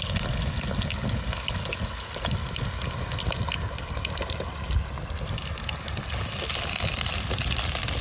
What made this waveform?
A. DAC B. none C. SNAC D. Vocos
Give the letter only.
B